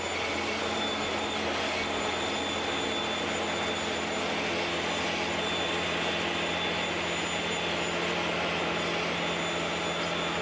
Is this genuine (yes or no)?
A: yes